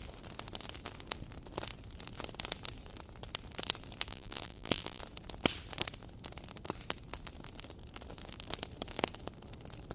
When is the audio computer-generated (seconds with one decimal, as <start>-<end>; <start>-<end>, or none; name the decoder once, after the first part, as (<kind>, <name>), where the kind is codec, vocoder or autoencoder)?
4.1-5.0 (vocoder, BigVGAN v2)